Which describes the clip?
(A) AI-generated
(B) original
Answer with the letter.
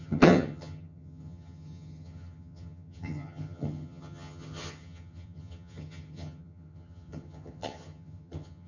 A